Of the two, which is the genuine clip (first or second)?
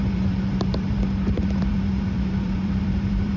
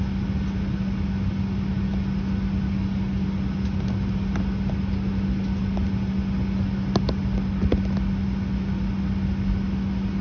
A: second